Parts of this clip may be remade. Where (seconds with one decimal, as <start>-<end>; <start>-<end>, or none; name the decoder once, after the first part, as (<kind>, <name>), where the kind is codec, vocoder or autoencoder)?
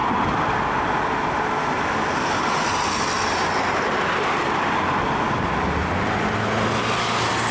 none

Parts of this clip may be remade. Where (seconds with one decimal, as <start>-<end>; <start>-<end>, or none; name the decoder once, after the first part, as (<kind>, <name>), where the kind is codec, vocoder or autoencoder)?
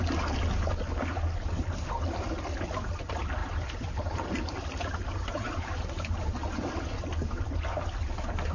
3.4-6.7 (vocoder, BigVGAN v2)